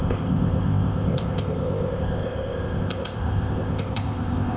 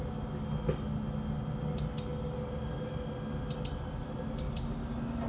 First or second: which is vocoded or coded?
first